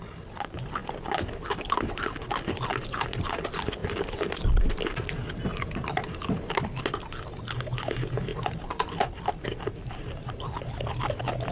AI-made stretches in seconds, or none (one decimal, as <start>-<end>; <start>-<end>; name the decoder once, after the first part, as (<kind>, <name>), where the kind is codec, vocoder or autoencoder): none